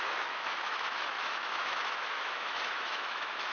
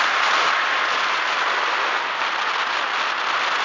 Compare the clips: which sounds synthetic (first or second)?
first